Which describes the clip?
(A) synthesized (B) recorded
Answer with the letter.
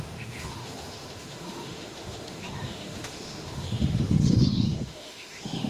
A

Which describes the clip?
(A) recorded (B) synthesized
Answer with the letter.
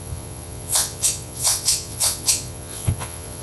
B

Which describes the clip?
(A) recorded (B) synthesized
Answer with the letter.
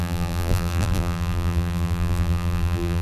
B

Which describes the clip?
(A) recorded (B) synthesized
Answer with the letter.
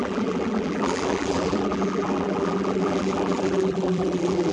B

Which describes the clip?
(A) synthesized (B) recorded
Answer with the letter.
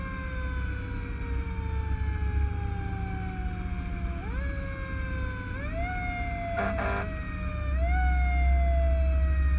B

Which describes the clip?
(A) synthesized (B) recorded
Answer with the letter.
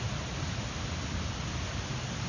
B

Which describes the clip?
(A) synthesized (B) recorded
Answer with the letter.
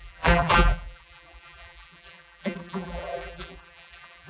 A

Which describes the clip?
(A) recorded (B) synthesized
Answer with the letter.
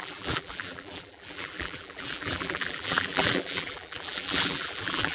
B